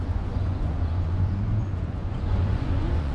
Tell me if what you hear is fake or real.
fake